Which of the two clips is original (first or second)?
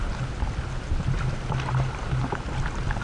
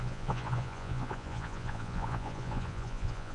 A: first